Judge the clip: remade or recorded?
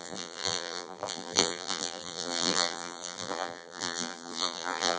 remade